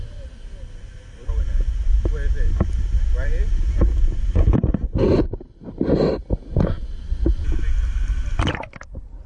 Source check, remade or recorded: recorded